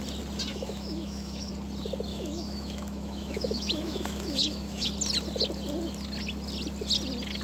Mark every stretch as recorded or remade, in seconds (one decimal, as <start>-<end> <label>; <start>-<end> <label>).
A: 0.0-0.5 recorded; 0.5-1.5 remade; 1.5-2.1 recorded; 2.1-4.9 remade; 4.9-7.4 recorded